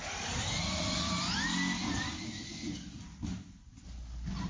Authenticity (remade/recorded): recorded